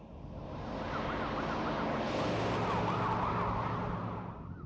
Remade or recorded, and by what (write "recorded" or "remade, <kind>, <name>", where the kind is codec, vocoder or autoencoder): recorded